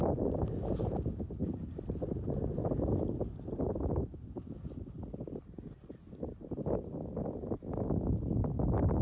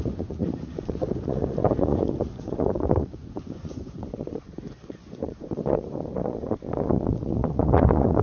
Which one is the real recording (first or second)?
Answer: first